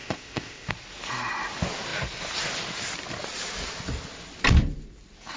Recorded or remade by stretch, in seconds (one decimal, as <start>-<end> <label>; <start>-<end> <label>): 0.0-0.7 remade; 0.7-5.4 recorded